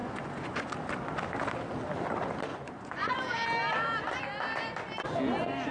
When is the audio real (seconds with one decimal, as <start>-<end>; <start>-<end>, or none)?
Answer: 0.7-2.5; 3.1-5.7